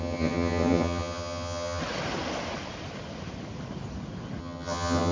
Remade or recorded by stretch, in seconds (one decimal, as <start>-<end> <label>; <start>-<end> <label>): 0.0-1.8 remade; 1.8-4.4 recorded; 4.4-5.1 remade